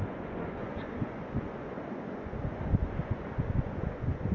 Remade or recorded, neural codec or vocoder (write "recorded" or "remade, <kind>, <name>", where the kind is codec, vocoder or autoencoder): remade, vocoder, Vocos